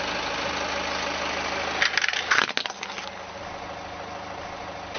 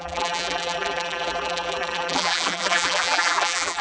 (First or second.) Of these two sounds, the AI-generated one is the second